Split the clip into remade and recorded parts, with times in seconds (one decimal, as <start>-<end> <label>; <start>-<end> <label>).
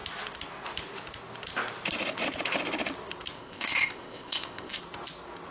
0.0-3.3 recorded; 3.3-4.8 remade; 4.8-5.5 recorded